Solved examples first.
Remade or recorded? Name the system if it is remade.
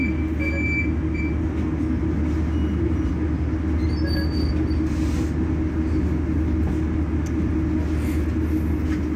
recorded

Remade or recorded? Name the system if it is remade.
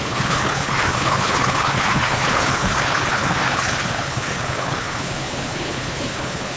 remade, codec, HILCodec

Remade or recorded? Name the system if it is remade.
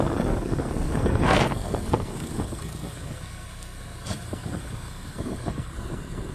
remade, codec, SNAC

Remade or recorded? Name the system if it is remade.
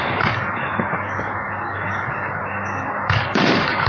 remade, codec, DAC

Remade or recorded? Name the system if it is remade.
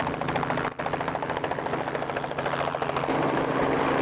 recorded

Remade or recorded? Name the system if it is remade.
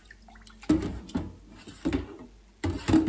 recorded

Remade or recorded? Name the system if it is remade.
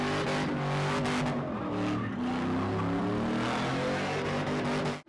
recorded